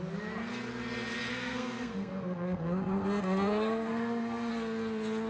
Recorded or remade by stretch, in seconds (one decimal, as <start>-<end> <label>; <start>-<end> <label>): 0.0-1.3 recorded; 1.3-4.5 remade; 4.5-5.3 recorded